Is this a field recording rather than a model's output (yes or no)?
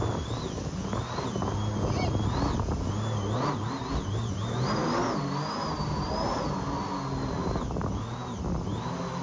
yes